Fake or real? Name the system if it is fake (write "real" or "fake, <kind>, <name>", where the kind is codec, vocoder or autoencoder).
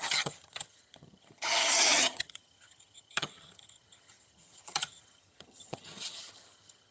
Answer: fake, vocoder, HiFi-GAN